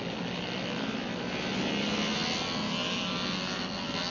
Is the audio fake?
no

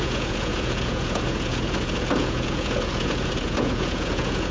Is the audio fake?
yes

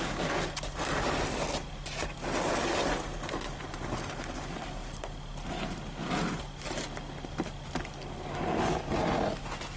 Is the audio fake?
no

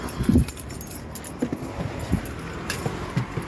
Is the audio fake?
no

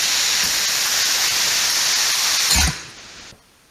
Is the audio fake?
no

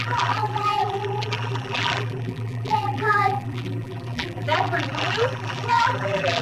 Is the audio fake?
yes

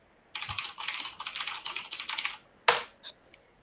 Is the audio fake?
no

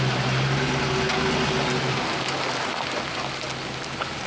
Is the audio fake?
no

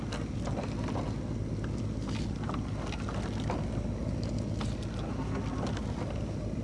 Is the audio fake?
no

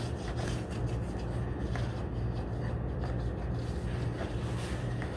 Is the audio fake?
no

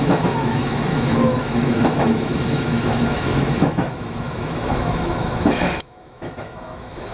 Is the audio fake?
yes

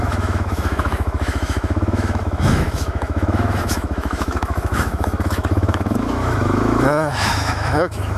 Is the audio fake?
yes